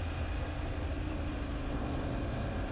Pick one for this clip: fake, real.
real